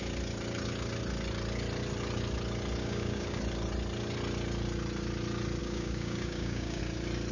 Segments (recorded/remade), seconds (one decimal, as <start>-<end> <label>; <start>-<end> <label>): 0.0-2.8 recorded; 2.8-3.4 remade; 3.4-5.6 recorded; 5.6-6.8 remade; 6.8-7.3 recorded

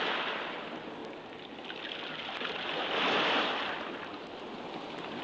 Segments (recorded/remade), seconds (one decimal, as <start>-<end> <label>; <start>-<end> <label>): 0.0-5.2 recorded

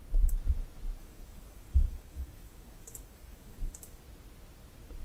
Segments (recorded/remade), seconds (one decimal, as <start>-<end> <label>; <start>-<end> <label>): 0.0-1.0 recorded; 1.0-4.0 remade; 4.0-5.0 recorded

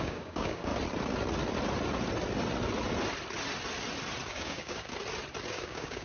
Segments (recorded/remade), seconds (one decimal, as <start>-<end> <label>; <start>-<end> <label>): 0.0-0.7 remade; 0.7-4.3 recorded; 4.3-4.9 remade; 4.9-5.5 recorded; 5.5-6.0 remade

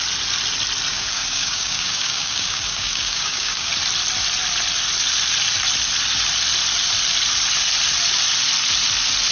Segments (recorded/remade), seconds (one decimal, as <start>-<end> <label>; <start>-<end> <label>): 0.0-0.9 recorded; 0.9-3.7 remade; 3.7-9.3 recorded